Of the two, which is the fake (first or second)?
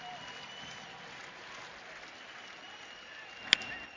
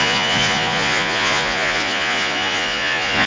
second